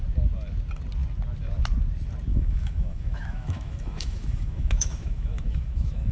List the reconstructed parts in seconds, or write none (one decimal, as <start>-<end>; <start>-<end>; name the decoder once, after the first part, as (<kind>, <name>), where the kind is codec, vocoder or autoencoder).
2.3-6.1 (autoencoder, DAC-VAE)

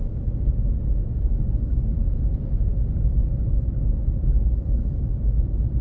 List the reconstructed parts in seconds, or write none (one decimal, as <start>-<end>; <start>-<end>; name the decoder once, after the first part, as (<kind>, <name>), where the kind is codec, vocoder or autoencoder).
0.9-5.8 (vocoder, BigVGAN v2)